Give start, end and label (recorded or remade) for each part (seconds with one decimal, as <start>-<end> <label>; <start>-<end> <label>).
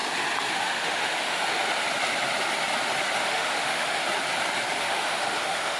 0.0-0.5 recorded; 0.5-1.6 remade; 1.6-3.2 recorded; 3.2-4.0 remade; 4.0-4.8 recorded; 4.8-5.8 remade